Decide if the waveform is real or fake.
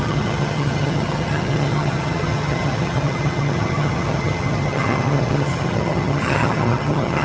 fake